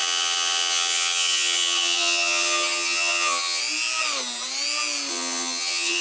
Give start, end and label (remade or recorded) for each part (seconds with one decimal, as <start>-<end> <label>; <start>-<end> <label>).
0.0-3.6 remade; 3.6-5.1 recorded; 5.1-6.0 remade